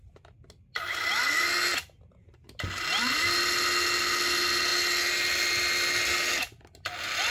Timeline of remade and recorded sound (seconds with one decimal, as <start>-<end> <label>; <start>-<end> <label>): 0.0-7.3 recorded